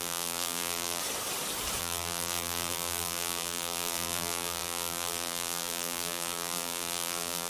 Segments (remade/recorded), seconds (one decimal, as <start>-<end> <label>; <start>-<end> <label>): 0.0-1.0 remade; 1.0-1.8 recorded; 1.8-7.5 remade